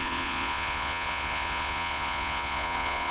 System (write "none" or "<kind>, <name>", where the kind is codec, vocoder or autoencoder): vocoder, Vocos